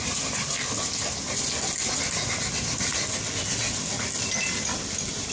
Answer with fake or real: real